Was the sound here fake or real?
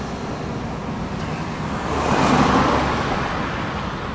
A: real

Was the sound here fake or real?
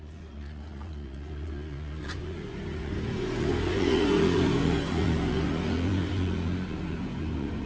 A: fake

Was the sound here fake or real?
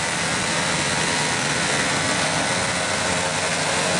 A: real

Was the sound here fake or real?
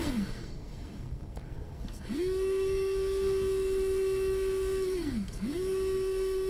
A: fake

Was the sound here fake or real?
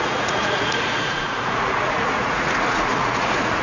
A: fake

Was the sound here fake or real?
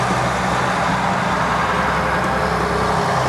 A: real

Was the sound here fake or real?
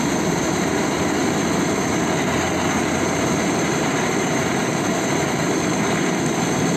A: fake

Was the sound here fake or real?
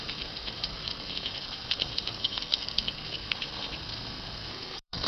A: fake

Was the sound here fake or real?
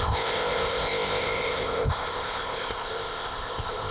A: fake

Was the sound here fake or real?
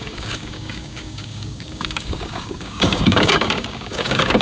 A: fake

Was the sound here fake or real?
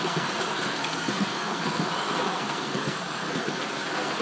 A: fake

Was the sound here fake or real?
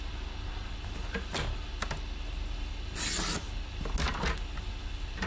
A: real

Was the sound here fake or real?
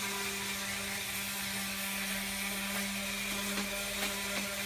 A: real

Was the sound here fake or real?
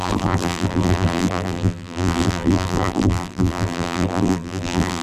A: fake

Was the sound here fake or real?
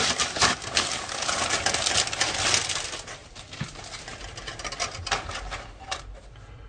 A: real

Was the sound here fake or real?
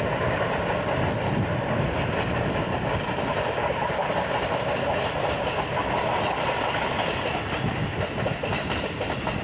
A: real